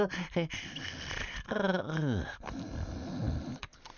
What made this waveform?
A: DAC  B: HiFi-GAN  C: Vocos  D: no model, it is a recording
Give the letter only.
D